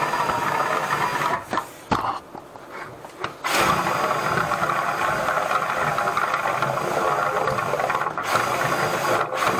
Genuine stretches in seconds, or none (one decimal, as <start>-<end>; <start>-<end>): 0.0-9.6